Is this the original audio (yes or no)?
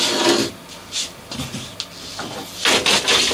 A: yes